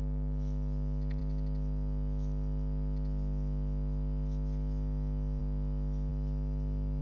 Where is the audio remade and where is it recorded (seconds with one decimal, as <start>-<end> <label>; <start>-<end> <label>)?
0.0-7.0 recorded